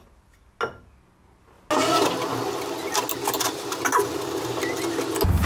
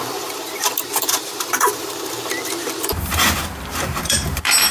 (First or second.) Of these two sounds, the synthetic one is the second